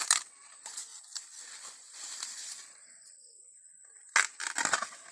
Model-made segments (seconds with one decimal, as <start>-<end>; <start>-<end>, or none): 0.9-4.0